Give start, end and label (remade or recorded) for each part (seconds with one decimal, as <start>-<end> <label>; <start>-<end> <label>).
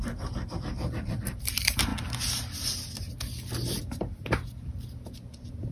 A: 0.0-1.9 remade; 1.9-3.8 recorded; 3.8-5.7 remade